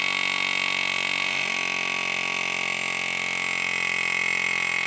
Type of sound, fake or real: real